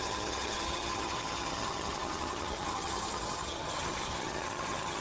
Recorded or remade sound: remade